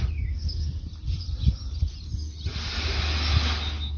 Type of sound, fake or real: real